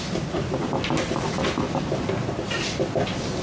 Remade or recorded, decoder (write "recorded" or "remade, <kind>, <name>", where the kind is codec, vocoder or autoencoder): recorded